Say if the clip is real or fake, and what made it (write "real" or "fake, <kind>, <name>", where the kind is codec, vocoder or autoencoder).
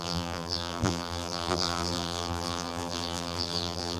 fake, vocoder, BigVGAN v2